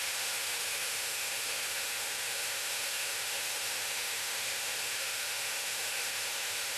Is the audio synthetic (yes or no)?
yes